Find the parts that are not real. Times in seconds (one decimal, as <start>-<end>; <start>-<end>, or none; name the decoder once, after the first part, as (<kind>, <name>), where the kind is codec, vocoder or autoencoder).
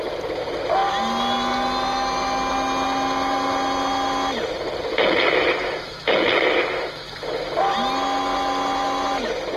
4.9-7.6 (autoencoder, DAC-VAE)